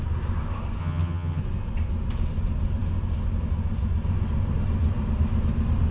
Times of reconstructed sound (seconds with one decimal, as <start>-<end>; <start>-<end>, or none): 0.8-1.4